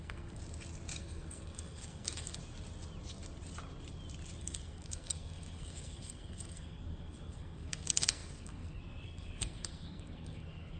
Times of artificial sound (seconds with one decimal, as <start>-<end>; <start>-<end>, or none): 0.0-0.4; 1.0-2.4; 4.4-10.8